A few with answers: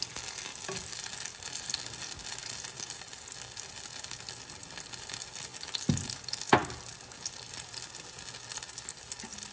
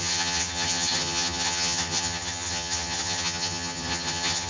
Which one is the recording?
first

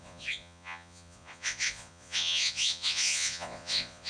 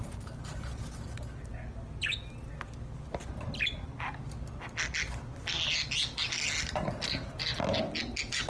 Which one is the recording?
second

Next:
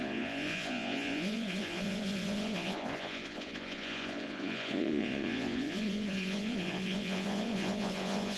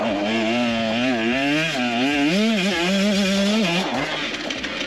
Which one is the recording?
second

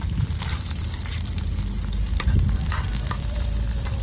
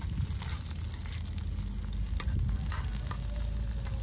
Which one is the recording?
second